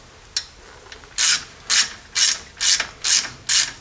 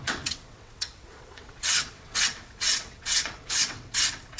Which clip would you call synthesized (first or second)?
second